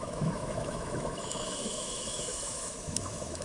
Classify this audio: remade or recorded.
remade